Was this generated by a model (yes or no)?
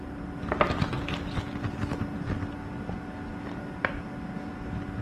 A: no